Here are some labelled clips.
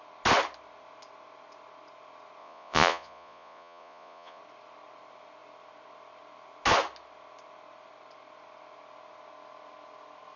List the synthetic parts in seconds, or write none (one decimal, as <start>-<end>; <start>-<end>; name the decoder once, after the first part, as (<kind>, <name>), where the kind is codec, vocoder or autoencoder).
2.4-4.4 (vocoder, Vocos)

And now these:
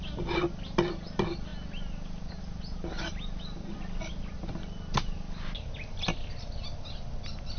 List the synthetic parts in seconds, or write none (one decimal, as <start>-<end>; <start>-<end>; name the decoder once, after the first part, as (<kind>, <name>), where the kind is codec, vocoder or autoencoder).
none

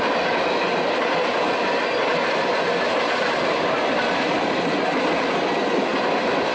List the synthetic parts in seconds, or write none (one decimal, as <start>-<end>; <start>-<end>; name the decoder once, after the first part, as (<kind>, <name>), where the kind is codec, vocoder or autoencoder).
none

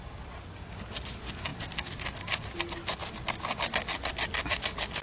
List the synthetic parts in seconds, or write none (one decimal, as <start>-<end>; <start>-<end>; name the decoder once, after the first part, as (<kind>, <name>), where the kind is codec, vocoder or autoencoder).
none